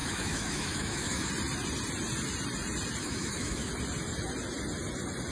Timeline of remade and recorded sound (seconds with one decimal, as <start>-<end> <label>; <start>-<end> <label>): 0.0-1.3 remade; 1.3-3.0 recorded; 3.0-3.7 remade; 3.7-5.3 recorded